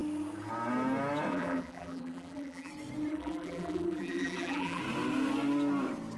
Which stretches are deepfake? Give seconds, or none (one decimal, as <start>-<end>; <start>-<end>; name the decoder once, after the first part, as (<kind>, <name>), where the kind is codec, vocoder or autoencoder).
1.3-2.7 (vocoder, BigVGAN v2); 3.1-4.8